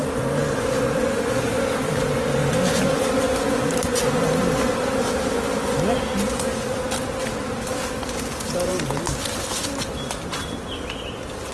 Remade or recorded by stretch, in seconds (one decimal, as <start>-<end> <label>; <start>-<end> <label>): 0.0-11.5 recorded